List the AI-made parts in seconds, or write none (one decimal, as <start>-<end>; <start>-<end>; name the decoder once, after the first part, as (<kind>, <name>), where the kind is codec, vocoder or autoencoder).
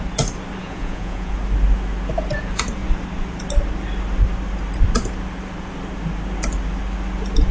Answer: 0.6-1.3 (vocoder, Vocos)